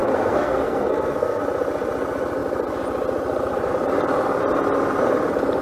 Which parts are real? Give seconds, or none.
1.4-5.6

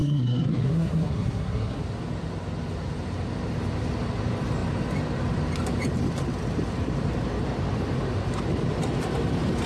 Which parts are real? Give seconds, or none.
1.8-9.7

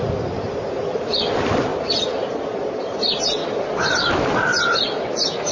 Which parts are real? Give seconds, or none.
0.0-5.5

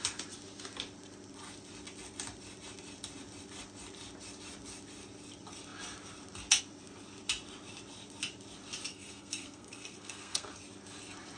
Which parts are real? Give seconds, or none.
0.0-8.9; 10.5-11.4

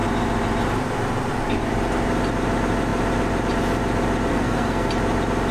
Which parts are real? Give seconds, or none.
0.0-4.3; 4.9-5.5

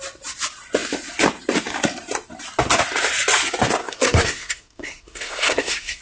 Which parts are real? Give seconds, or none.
0.0-3.8

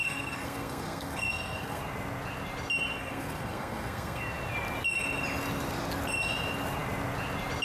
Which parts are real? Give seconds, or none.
1.8-3.0; 4.2-7.6

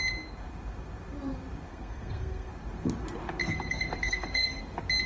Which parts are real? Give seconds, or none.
0.0-1.7; 2.5-3.4; 4.6-5.1